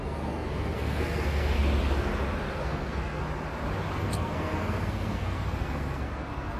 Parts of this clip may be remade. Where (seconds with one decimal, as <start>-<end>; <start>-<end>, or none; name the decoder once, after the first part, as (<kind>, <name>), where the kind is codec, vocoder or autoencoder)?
0.0-1.6 (codec, SNAC); 2.5-3.2; 4.0-6.6